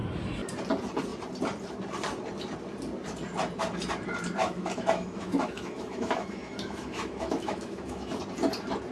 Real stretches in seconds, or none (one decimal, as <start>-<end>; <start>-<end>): 0.0-4.4; 8.2-8.9